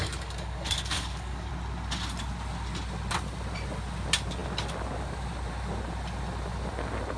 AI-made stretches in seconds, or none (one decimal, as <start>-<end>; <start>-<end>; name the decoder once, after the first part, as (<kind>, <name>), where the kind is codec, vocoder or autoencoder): 0.0-1.5 (codec, DAC)

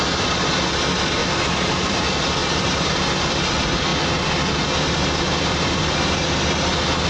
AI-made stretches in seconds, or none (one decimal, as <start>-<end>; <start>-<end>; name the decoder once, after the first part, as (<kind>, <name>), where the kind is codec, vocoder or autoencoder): 1.2-2.0 (vocoder, BigVGAN v2); 2.4-3.0

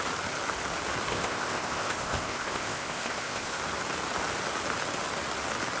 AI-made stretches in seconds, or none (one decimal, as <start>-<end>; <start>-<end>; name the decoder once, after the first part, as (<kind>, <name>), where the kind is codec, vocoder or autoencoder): 1.1-3.6 (codec, ZipCodec)

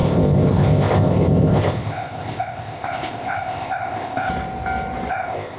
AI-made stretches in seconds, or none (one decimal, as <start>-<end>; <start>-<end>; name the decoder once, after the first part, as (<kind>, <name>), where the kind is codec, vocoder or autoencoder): 0.0-4.3 (codec, ZipCodec); 5.1-5.6